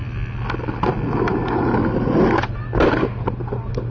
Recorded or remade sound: recorded